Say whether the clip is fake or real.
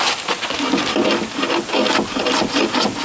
real